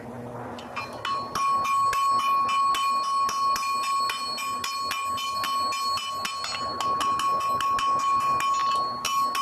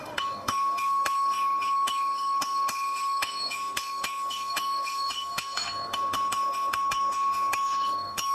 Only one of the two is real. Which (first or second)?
first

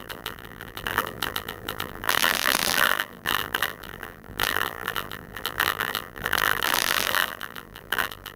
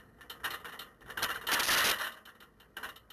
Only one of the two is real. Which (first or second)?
second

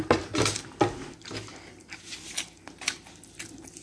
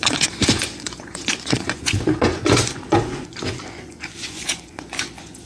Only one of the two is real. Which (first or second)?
first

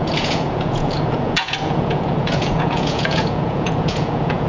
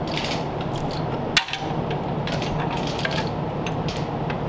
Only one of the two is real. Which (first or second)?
second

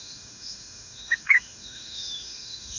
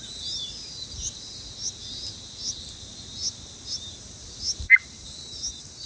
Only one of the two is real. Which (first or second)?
second